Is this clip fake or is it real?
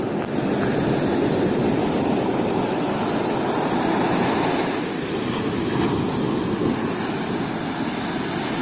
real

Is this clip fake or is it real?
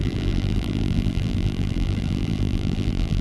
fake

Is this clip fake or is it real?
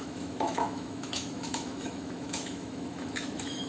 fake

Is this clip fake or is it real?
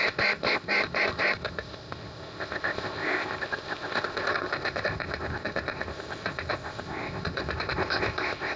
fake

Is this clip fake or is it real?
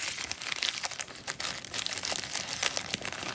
real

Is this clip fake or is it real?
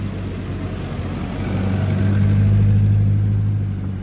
real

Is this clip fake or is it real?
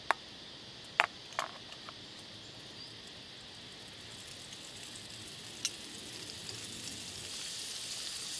real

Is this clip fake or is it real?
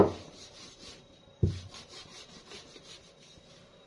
real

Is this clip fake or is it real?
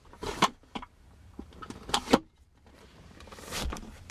fake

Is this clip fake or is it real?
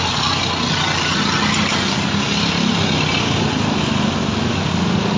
real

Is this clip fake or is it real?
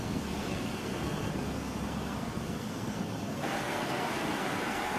fake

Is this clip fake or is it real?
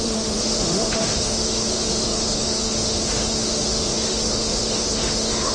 fake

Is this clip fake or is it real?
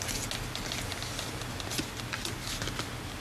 real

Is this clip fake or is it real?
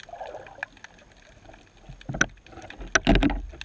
real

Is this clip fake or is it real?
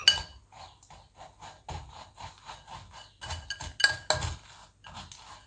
real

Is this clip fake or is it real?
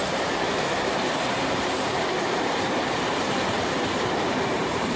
fake